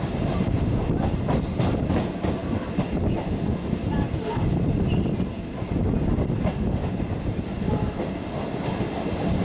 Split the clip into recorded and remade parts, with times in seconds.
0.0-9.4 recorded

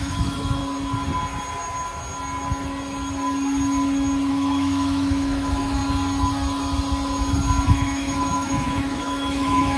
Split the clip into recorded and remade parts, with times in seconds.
0.0-0.6 remade; 0.6-4.3 recorded; 4.3-5.8 remade; 5.8-7.7 recorded; 7.7-9.8 remade